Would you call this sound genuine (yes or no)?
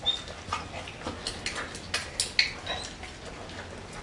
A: yes